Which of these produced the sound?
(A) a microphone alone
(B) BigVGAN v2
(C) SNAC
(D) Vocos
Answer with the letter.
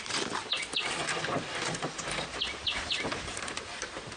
A